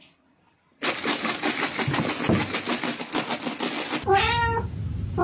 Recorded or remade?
recorded